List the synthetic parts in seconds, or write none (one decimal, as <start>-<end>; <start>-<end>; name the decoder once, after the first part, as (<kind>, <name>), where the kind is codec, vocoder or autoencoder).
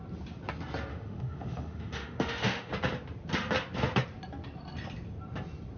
0.9-2.7 (autoencoder, DAC-VAE)